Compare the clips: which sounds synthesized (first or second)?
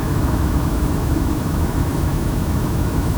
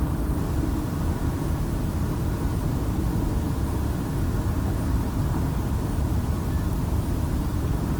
first